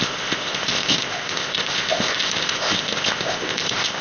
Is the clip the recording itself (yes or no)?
no